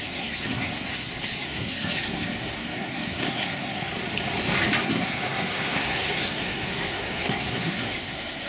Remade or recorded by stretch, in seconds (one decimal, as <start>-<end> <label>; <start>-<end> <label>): 0.0-3.9 remade; 3.9-4.8 recorded; 4.8-8.5 remade